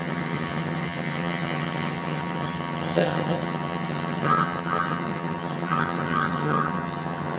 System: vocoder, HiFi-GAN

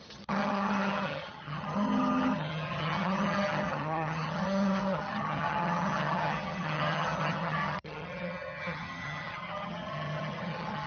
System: vocoder, HiFi-GAN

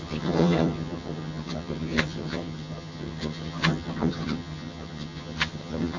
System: vocoder, HiFi-GAN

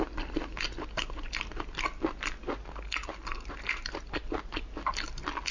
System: none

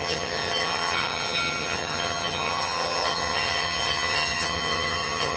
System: vocoder, HiFi-GAN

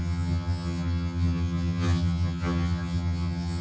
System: vocoder, HiFi-GAN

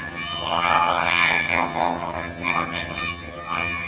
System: vocoder, HiFi-GAN